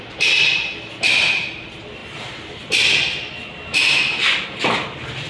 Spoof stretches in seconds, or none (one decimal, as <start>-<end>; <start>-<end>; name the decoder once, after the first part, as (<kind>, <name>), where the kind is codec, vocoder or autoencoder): none